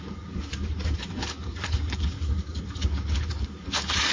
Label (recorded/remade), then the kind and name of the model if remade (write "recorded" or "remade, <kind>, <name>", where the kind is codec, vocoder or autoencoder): remade, codec, DAC